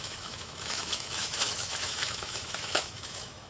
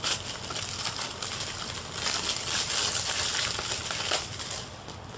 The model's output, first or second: first